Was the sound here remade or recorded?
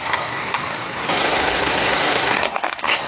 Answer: remade